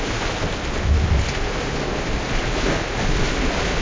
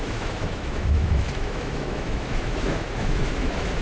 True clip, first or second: first